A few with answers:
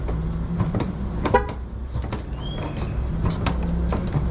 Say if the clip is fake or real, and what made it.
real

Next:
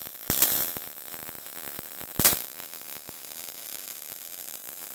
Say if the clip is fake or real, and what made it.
fake, vocoder, BigVGAN v2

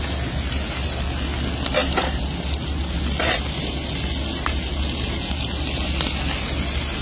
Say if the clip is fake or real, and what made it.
real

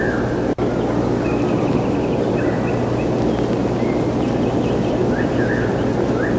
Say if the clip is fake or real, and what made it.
real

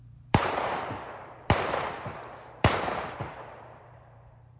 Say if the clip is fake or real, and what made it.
fake, vocoder, BigVGAN v2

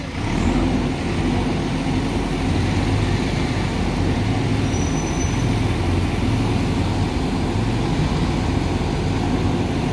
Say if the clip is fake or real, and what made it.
real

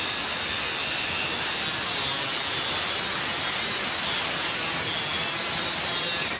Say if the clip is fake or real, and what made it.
real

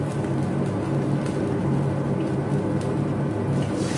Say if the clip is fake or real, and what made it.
real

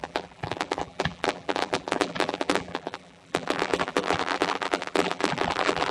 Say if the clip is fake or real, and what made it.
fake, vocoder, BigVGAN v2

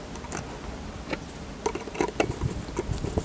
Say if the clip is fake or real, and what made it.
real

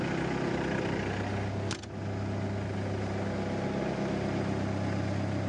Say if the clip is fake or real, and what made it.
real